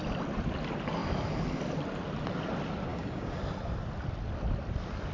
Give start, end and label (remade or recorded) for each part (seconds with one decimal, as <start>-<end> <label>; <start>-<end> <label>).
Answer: 0.0-2.9 recorded; 2.9-3.4 remade; 3.4-5.1 recorded